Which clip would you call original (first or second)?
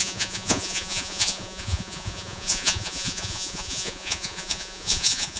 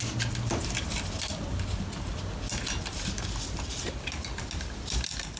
second